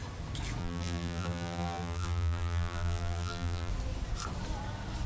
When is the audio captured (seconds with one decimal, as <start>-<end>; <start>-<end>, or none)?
0.0-0.6; 3.7-5.1